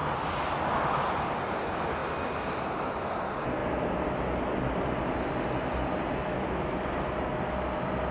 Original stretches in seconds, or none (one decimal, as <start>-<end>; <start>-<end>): 0.0-8.1